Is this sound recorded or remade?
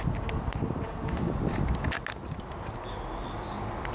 recorded